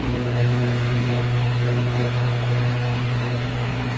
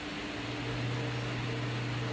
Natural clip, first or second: second